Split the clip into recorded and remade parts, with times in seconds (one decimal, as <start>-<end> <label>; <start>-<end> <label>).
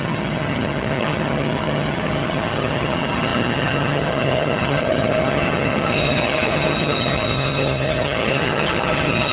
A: 0.0-9.3 remade